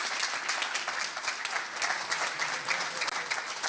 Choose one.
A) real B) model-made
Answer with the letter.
A